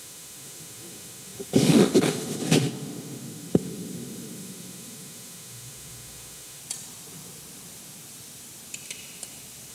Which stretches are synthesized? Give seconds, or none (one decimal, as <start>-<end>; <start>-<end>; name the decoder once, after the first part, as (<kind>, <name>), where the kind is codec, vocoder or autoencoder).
0.0-6.6 (autoencoder, DAC-VAE)